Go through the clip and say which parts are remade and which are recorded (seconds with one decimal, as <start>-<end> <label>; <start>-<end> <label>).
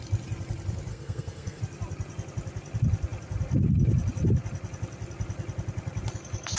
0.0-0.9 recorded; 0.9-1.6 remade; 1.6-6.6 recorded